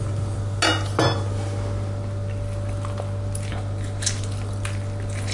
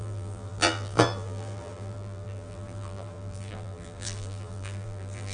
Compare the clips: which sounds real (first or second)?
first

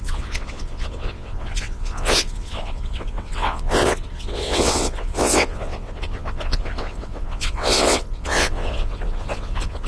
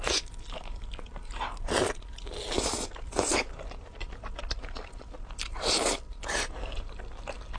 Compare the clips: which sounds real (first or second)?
second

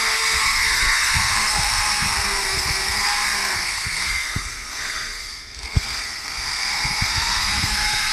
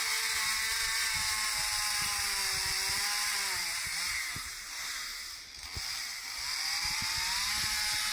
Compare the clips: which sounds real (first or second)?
second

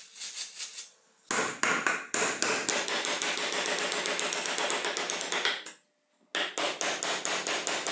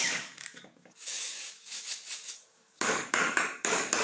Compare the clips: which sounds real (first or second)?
first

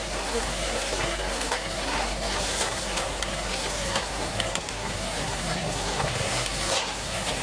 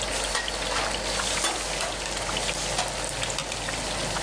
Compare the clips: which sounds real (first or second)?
second